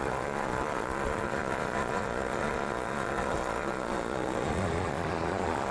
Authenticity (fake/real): fake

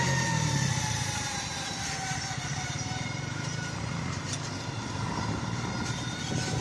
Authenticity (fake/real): fake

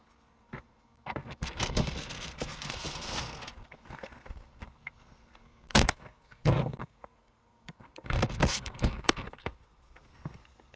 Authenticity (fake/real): fake